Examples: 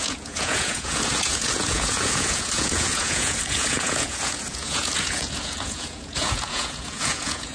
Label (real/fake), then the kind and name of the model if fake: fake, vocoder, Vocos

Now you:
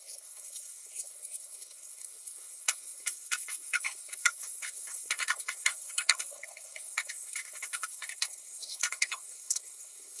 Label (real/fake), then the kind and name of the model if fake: fake, codec, SNAC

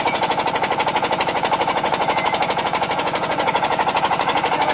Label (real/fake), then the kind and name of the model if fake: fake, vocoder, Vocos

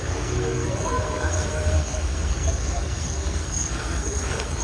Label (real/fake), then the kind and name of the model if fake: fake, codec, SNAC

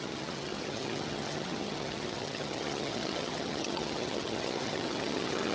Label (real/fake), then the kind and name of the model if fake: fake, vocoder, HiFi-GAN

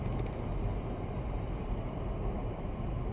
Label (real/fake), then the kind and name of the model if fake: real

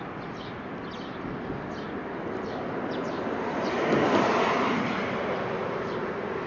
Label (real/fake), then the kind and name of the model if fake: real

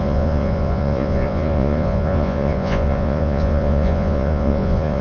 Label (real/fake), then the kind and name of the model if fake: fake, vocoder, Vocos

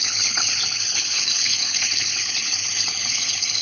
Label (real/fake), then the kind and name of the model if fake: fake, codec, HILCodec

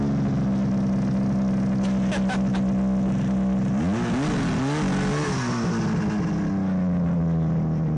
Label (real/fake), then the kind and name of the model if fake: real